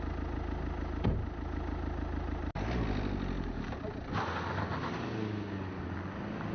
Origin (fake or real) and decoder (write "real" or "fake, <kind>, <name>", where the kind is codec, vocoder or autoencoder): real